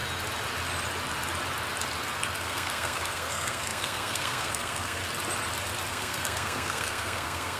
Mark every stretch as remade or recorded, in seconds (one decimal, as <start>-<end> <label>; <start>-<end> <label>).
0.0-2.4 recorded; 2.4-5.0 remade; 5.0-5.9 recorded; 5.9-7.6 remade